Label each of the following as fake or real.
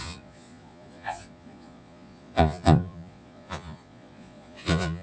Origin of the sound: fake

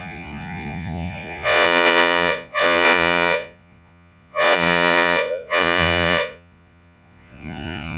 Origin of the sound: fake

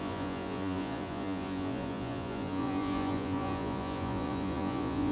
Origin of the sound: fake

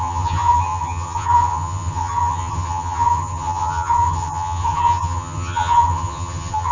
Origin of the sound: fake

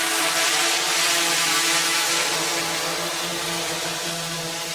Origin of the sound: fake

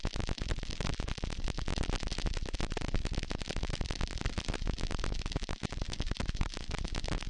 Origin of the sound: fake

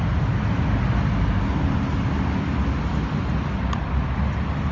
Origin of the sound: real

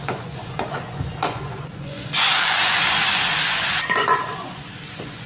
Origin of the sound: fake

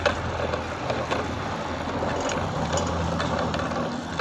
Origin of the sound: real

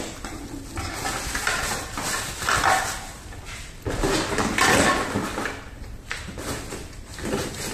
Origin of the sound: real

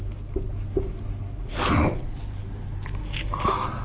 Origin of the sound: real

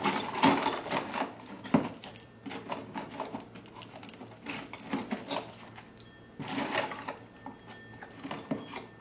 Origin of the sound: real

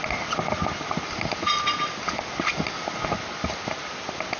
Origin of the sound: real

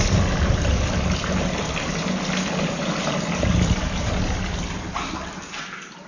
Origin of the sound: real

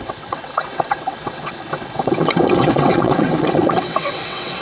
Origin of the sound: fake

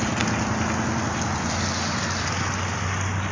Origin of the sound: real